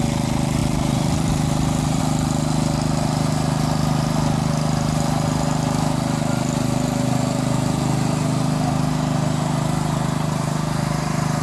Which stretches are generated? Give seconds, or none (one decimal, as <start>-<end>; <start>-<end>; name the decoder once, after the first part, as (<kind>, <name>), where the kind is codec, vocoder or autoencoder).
0.6-2.0 (vocoder, BigVGAN v2)